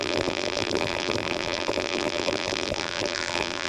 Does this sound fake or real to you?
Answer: fake